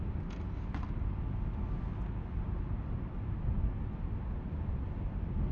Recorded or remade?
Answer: recorded